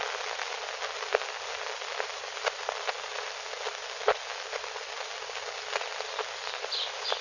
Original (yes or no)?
yes